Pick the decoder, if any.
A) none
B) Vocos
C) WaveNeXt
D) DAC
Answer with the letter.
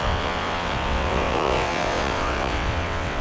C